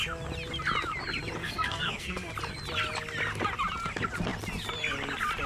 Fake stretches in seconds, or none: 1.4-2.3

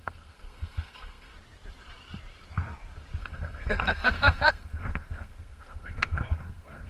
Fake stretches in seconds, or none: 0.0-1.3; 3.2-6.9

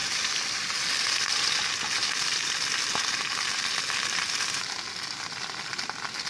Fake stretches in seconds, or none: none

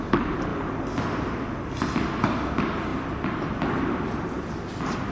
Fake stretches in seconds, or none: none